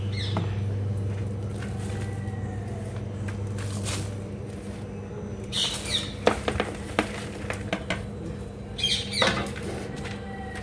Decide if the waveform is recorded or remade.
recorded